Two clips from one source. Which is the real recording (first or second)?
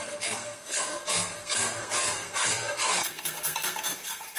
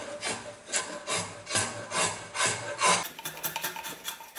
second